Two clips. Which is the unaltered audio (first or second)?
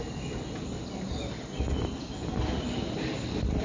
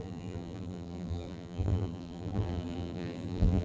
first